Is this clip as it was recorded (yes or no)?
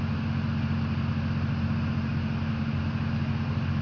yes